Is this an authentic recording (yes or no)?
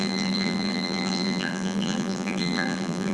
no